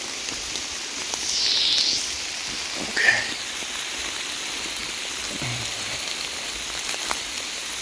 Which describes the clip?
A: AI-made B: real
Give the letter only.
B